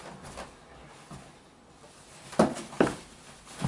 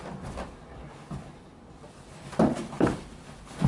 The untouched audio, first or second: first